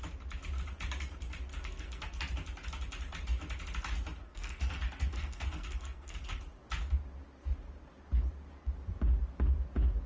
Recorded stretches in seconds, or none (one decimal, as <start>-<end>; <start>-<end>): 0.0-1.6; 2.2-4.2; 6.4-10.1